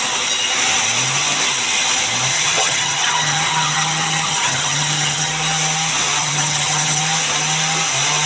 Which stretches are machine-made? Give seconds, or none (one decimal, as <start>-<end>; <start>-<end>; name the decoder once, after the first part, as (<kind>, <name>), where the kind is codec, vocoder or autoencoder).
2.3-5.3 (vocoder, HiFi-GAN); 6.2-7.0